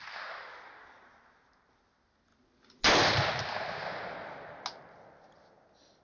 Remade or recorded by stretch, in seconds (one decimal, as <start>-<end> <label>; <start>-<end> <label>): 0.0-6.0 recorded